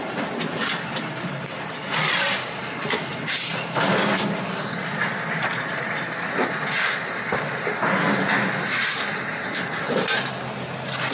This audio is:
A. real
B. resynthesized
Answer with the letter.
A